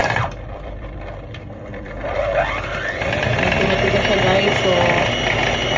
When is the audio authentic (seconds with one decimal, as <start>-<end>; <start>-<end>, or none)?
2.2-5.8